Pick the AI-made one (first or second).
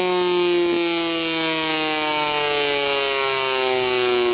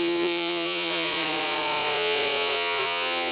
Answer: second